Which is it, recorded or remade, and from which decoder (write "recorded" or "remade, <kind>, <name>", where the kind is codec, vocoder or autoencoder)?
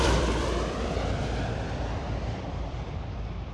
remade, vocoder, BigVGAN v2